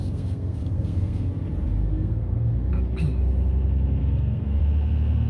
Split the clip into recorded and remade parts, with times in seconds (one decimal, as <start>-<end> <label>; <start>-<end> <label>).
0.0-1.3 remade; 1.3-1.8 recorded; 1.8-2.7 remade; 2.7-4.0 recorded; 4.0-4.6 remade; 4.6-5.3 recorded